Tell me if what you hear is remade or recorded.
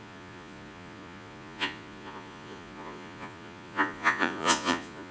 remade